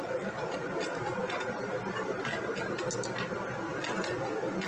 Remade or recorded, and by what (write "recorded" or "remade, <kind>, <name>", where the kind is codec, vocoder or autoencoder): recorded